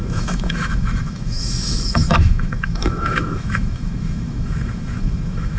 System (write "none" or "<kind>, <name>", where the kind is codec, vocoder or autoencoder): autoencoder, DAC-VAE